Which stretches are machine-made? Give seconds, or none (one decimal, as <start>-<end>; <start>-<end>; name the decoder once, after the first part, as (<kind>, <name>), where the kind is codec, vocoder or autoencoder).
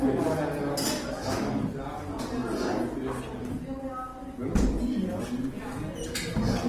none